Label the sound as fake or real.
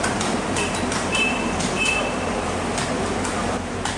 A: fake